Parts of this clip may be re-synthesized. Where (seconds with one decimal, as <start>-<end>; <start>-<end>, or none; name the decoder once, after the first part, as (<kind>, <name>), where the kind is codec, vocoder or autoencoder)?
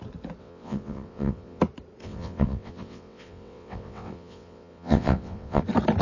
0.4-1.6 (vocoder, WaveNeXt); 2.0-5.6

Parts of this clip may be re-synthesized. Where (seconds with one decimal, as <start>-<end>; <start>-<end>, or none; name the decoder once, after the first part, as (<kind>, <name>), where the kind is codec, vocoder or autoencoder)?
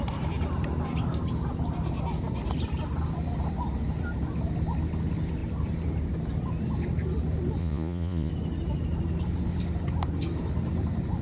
7.6-8.3 (vocoder, Vocos)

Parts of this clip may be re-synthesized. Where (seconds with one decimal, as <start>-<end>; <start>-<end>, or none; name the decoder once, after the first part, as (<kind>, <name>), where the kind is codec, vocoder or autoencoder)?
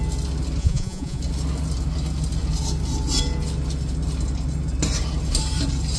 0.6-1.2 (vocoder, Vocos)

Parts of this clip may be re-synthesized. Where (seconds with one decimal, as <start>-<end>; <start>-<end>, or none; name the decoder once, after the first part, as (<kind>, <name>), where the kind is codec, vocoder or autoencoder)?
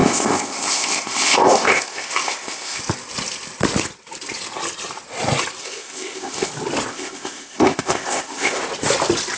0.0-2.8 (codec, ZipCodec); 5.6-6.5; 6.9-8.6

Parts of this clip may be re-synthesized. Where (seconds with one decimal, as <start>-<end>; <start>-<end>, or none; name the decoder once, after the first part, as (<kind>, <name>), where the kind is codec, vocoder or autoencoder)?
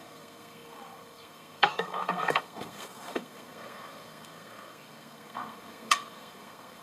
0.0-6.8 (codec, SNAC)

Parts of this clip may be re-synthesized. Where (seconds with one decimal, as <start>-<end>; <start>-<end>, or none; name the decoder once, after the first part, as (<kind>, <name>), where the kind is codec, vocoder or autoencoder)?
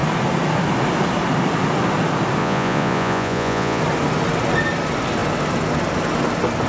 2.4-3.8 (vocoder, Vocos)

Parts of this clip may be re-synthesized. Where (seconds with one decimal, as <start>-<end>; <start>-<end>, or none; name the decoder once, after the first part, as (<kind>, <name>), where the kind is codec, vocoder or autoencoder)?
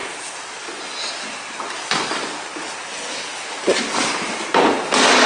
none